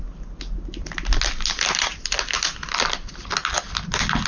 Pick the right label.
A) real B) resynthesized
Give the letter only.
A